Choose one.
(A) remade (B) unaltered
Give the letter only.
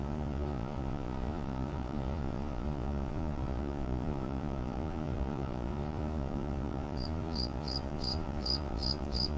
A